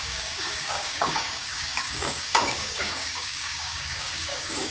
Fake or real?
fake